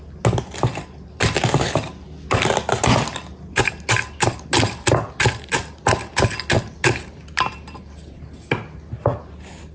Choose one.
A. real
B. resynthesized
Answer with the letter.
A